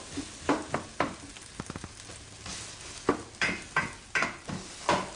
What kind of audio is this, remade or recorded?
recorded